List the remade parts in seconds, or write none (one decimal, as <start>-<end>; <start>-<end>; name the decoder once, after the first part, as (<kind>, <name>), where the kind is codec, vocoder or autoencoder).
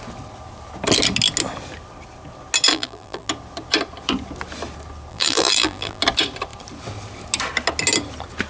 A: 2.7-3.3 (vocoder, BigVGAN v2); 5.1-6.0